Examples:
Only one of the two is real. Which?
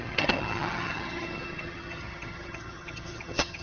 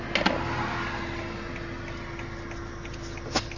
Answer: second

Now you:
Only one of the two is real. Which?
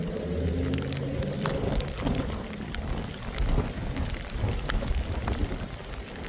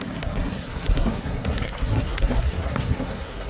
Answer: first